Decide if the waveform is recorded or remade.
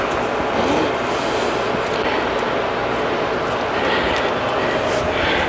recorded